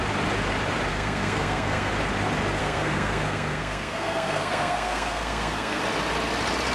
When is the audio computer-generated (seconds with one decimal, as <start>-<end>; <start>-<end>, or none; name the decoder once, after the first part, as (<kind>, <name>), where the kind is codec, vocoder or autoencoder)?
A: 0.9-1.9 (codec, SNAC); 2.6-5.8